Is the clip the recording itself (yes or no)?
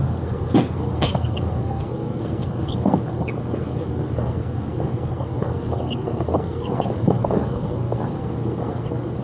no